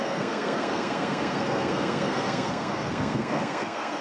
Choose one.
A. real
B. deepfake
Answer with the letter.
B